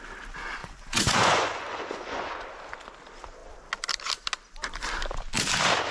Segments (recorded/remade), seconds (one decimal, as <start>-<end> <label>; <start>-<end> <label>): 0.0-0.6 recorded; 0.6-2.3 remade; 2.3-5.9 recorded